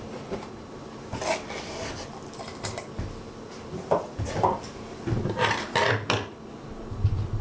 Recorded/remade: recorded